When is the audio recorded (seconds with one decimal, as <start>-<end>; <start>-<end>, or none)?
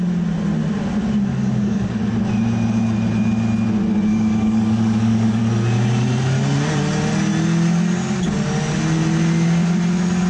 0.0-1.3; 2.0-4.1; 5.4-10.3